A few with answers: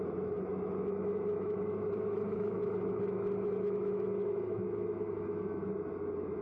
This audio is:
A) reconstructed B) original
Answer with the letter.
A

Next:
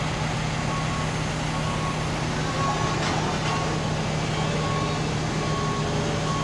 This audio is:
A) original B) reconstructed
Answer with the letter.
A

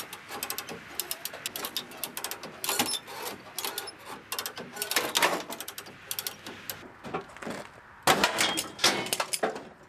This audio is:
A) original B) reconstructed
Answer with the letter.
A